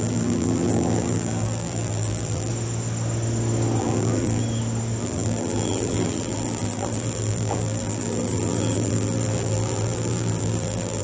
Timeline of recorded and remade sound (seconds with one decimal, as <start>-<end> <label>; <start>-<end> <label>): 0.0-2.5 remade; 2.5-3.8 recorded; 3.8-4.4 remade; 4.4-5.0 recorded; 5.0-11.0 remade